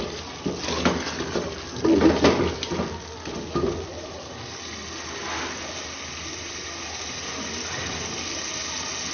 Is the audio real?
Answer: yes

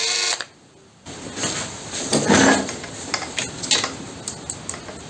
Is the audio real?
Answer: yes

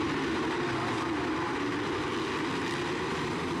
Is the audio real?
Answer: yes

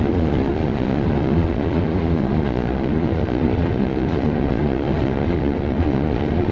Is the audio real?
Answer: no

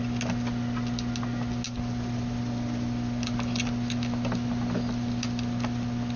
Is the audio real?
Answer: yes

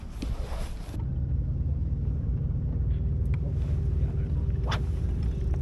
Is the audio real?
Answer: yes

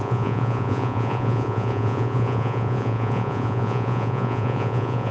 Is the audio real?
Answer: no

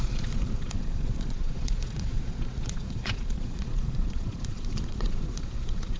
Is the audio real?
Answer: no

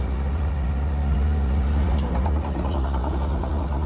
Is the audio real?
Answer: no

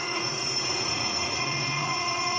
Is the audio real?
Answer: no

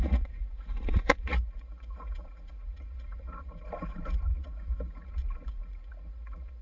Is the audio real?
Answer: no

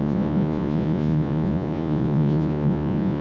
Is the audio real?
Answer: no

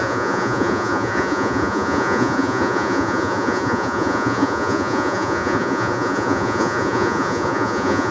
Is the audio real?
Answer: no